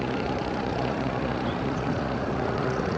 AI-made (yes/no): yes